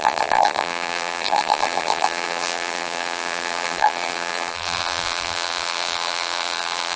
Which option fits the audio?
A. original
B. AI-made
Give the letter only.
B